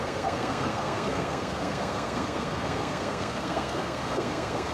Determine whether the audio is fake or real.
fake